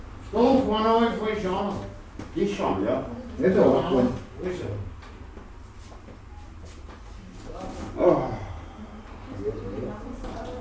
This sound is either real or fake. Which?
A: real